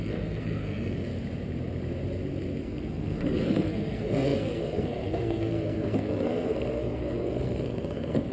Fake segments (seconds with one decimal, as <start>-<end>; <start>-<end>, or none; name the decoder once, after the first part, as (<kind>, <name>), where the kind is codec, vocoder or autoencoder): 0.0-1.1 (codec, SNAC); 2.6-8.3